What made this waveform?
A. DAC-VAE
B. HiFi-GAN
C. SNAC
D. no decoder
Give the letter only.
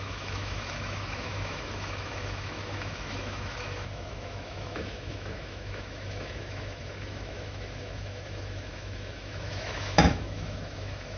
A